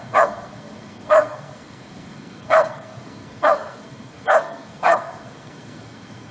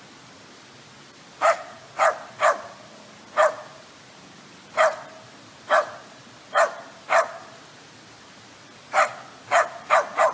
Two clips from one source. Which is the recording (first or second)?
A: second